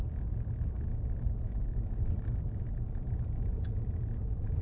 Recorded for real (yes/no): yes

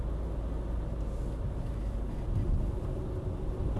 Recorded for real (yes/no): yes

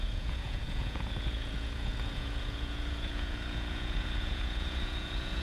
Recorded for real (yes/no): no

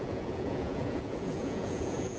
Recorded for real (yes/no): no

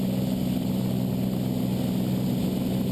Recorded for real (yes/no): yes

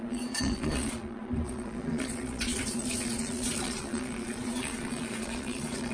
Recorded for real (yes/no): no